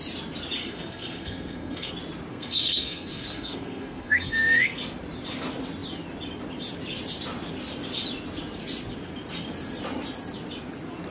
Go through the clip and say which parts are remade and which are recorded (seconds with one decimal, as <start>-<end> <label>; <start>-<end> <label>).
0.0-0.6 recorded; 0.6-1.9 remade; 1.9-2.3 recorded; 2.3-4.8 remade; 4.8-11.1 recorded